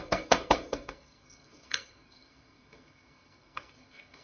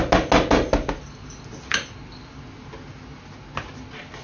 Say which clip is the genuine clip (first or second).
second